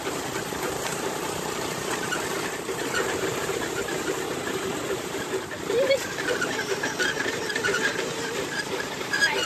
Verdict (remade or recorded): remade